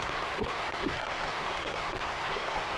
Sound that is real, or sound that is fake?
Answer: fake